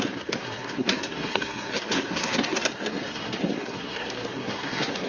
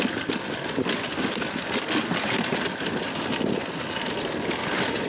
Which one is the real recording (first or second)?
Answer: second